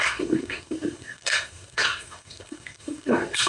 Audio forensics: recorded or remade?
remade